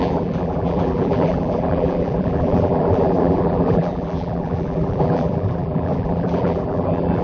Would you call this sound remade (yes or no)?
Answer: yes